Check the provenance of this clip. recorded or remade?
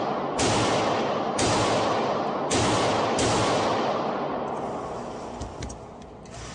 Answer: recorded